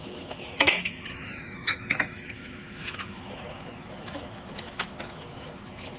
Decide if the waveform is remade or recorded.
remade